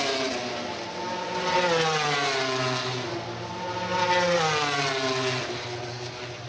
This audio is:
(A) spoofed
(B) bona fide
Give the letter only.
B